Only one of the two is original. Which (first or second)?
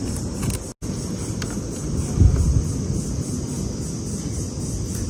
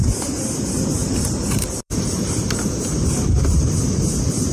first